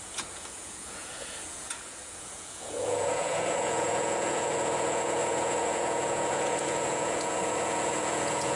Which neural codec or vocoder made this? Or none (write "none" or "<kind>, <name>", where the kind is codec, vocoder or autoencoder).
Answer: vocoder, Vocos